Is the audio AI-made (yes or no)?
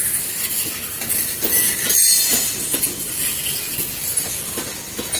no